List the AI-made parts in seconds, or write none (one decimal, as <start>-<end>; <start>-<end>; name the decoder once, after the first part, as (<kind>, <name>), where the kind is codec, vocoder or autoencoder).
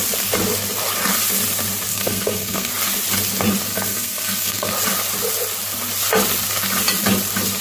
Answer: 1.9-2.7 (codec, SNAC); 3.7-4.7